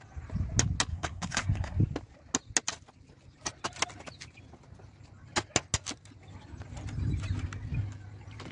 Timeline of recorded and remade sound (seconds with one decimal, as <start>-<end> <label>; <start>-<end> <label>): 0.0-0.9 recorded; 0.9-1.8 remade; 1.8-8.5 recorded